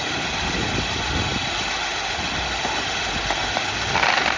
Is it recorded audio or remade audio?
recorded